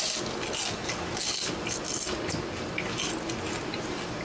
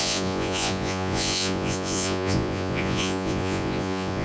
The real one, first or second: first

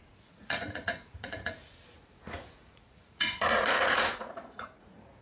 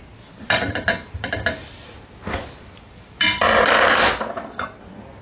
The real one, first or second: second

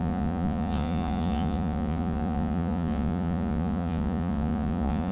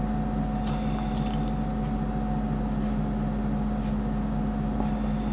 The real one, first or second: second